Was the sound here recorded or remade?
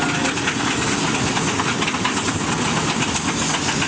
recorded